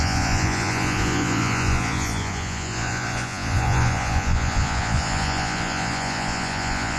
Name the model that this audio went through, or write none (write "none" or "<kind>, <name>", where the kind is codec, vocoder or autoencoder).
vocoder, Vocos